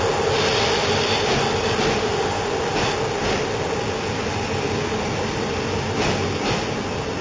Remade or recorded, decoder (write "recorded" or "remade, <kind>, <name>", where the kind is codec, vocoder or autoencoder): recorded